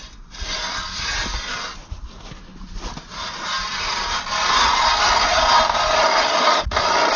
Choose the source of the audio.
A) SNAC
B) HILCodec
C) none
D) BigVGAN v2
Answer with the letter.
C